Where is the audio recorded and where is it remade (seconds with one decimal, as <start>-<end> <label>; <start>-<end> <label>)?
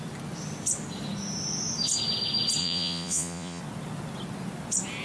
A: 0.0-2.6 recorded; 2.6-3.6 remade; 3.6-5.0 recorded